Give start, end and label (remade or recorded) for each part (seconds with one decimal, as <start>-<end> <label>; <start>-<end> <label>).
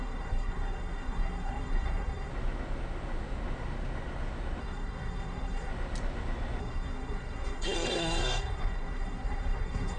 0.0-2.3 remade; 2.3-4.6 recorded; 4.6-5.7 remade; 5.7-6.6 recorded; 6.6-10.0 remade